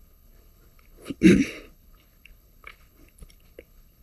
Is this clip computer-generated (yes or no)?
yes